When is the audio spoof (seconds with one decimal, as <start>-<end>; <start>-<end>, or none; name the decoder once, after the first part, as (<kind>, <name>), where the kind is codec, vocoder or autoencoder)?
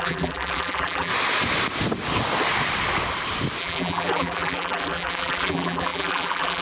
0.0-1.1 (vocoder, BigVGAN v2); 3.6-6.6